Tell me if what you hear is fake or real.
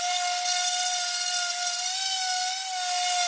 real